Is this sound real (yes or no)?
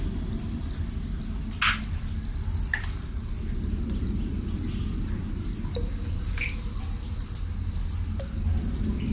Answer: yes